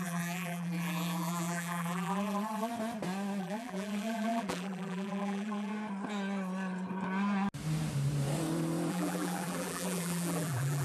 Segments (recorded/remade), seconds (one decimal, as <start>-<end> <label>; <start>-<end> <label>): 0.0-2.7 remade; 2.7-3.4 recorded; 3.4-5.7 remade; 5.7-8.9 recorded; 8.9-10.8 remade